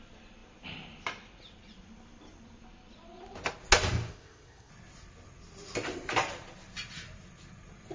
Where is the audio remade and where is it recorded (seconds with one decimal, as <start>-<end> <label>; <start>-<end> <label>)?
0.0-4.1 recorded; 4.1-4.7 remade; 4.7-7.9 recorded